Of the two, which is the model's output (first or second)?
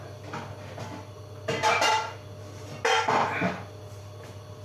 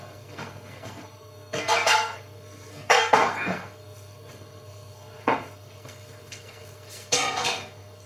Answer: second